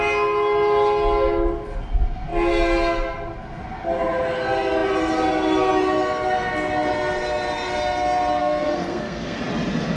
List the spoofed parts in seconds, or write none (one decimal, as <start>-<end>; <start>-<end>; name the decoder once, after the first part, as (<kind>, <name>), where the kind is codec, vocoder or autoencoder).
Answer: 8.4-9.4 (codec, SNAC)